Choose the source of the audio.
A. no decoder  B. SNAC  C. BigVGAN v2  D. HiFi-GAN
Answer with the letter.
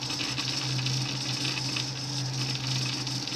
A